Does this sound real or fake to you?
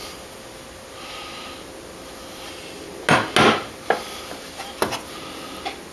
real